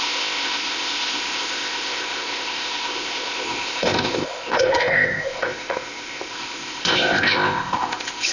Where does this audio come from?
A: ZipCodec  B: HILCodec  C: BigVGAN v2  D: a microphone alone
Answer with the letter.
A